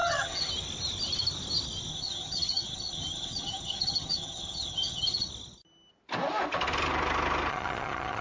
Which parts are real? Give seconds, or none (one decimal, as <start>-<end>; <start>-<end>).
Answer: 0.5-1.9; 5.3-7.5